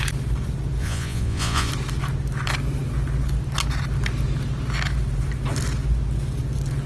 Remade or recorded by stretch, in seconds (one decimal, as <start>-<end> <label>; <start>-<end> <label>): 0.0-0.8 recorded; 0.8-1.7 remade; 1.7-6.9 recorded